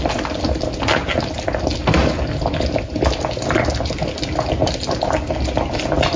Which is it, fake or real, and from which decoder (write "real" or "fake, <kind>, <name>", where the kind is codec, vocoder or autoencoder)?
real